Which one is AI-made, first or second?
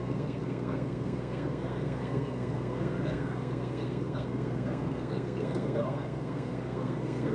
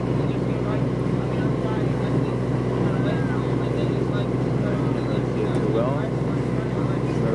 first